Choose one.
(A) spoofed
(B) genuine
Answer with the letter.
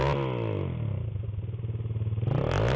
B